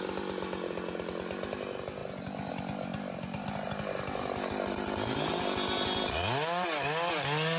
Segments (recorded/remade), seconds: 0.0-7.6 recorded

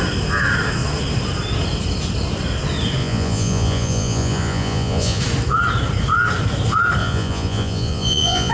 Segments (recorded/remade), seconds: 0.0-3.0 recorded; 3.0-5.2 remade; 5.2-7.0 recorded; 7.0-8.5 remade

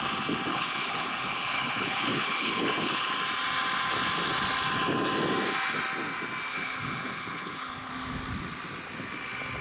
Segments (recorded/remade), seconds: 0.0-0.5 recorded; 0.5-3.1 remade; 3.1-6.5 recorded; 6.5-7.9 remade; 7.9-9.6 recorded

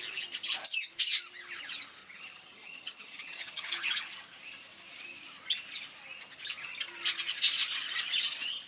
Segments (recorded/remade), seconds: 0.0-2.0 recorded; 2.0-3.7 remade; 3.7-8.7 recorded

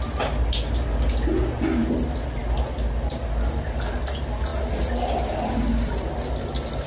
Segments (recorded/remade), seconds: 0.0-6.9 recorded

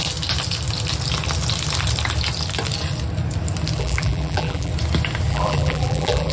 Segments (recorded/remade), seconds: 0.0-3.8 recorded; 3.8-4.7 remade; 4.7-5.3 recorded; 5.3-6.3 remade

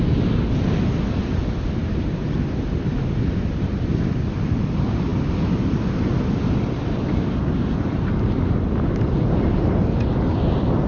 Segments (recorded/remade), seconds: 0.0-1.8 recorded; 1.8-2.9 remade; 2.9-10.9 recorded